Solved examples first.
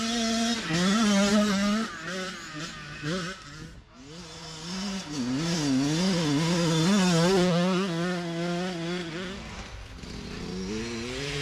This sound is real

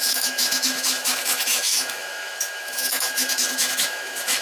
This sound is fake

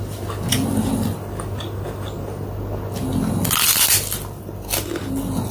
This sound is real